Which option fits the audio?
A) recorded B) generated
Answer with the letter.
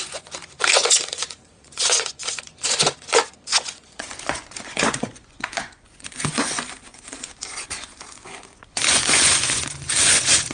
B